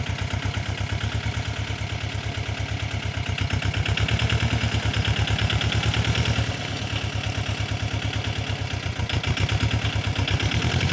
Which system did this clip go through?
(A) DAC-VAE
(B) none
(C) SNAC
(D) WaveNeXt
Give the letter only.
B